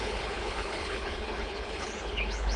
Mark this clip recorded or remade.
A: remade